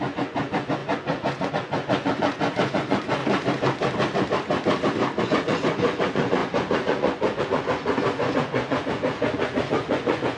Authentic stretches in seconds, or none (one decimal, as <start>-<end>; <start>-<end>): 3.2-5.2